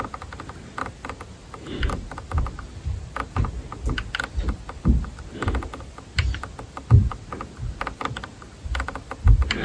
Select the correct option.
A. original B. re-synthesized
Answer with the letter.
A